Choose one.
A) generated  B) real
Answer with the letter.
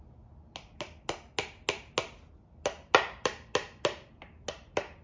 B